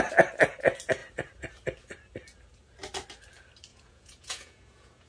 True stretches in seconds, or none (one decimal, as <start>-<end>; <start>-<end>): 0.0-3.7